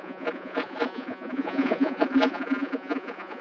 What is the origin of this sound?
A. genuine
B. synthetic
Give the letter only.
B